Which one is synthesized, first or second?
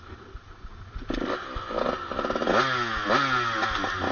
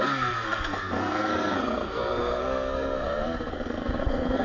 second